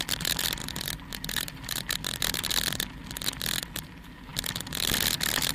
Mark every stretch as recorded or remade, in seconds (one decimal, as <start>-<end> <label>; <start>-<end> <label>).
0.0-0.6 recorded; 0.6-1.9 remade; 1.9-5.5 recorded